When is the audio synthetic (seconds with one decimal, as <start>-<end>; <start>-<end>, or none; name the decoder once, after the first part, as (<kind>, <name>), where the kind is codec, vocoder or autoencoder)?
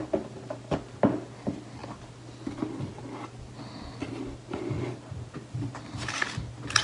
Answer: none